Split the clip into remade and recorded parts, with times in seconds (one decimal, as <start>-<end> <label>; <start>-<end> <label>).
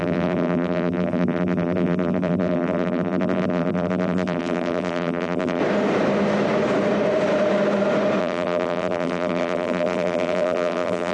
0.0-5.6 remade; 5.6-8.2 recorded; 8.2-11.1 remade